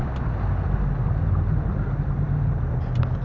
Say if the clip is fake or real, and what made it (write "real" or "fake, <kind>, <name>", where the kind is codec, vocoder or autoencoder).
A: real